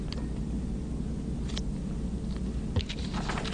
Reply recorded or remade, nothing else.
recorded